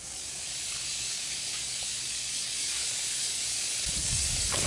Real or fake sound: fake